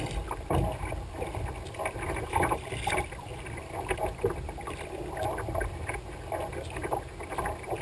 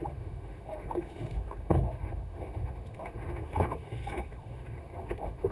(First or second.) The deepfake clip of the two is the second